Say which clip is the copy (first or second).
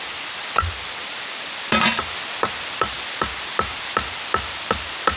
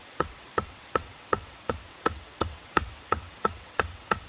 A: second